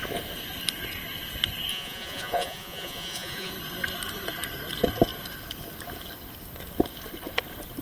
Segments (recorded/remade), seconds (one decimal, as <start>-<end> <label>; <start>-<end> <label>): 0.0-1.7 recorded; 1.7-3.5 remade; 3.5-7.8 recorded